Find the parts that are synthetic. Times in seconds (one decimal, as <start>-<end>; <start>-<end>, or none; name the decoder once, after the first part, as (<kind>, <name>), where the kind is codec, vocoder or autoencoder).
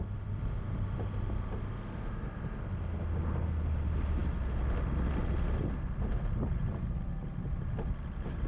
none